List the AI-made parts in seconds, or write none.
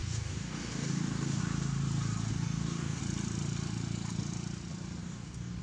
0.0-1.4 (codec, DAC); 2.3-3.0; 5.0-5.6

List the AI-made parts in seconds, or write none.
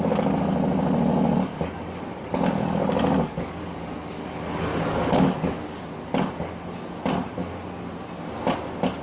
1.5-5.8 (codec, DAC)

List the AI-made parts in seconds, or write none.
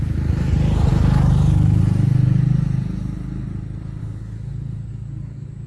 0.9-1.8 (codec, DAC); 4.0-5.7